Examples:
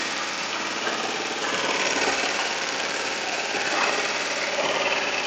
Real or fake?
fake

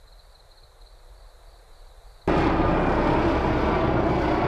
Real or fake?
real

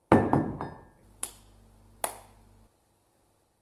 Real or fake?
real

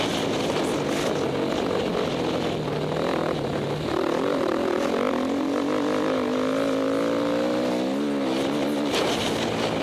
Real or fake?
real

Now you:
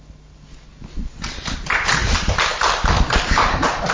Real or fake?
real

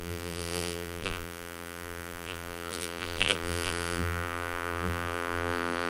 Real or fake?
fake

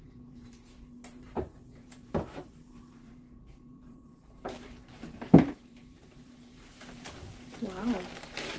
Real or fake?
fake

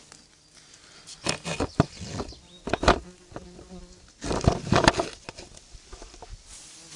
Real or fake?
real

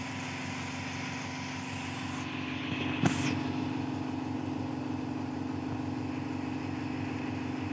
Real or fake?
real